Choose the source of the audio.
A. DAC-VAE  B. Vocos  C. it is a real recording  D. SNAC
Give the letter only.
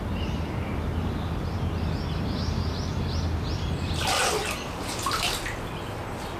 C